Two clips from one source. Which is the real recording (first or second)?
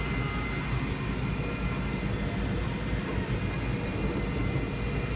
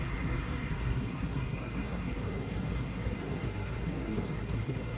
first